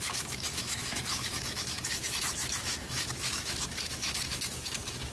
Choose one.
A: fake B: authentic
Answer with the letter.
A